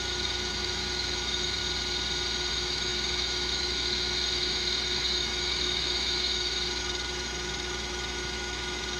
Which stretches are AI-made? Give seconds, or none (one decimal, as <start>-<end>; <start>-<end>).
0.0-1.6; 2.5-9.0